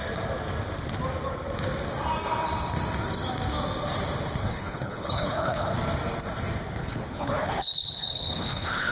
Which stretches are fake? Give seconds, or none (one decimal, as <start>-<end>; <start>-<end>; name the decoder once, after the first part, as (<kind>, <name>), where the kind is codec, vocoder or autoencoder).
4.4-5.7 (codec, HILCodec); 6.8-8.9